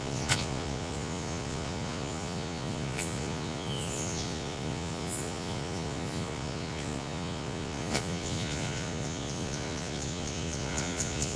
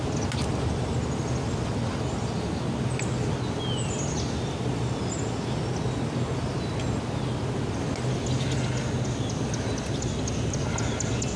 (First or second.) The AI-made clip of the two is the first